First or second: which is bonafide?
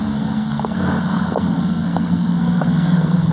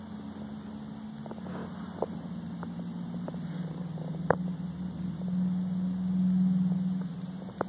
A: second